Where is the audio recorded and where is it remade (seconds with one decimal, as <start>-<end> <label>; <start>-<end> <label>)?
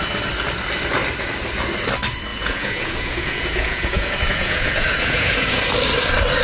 0.0-2.3 recorded; 2.3-5.6 remade; 5.6-6.4 recorded